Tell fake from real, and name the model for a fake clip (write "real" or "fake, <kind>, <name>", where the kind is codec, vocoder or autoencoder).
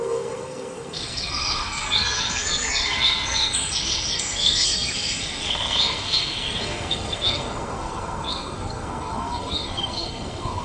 fake, codec, SNAC